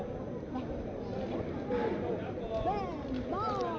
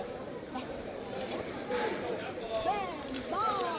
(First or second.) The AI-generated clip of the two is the second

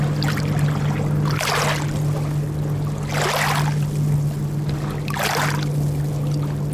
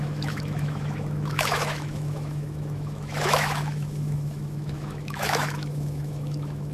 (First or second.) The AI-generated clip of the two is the second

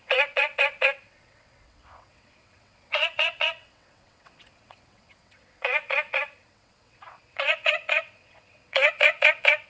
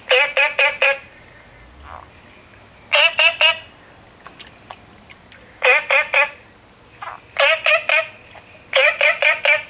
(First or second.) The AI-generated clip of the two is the first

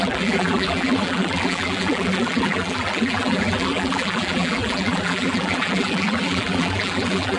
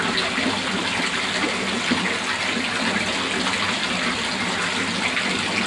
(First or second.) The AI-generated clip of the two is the first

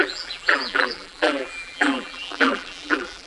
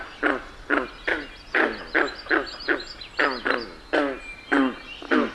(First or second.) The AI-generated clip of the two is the first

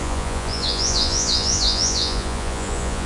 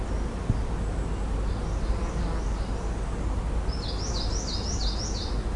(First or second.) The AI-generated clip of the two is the first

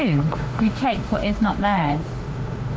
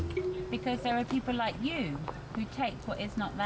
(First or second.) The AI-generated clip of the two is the first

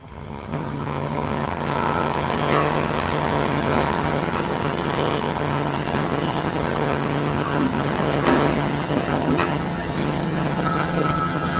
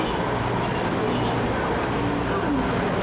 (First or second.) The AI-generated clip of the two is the first